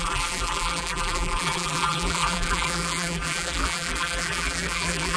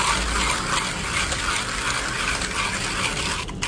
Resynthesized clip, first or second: first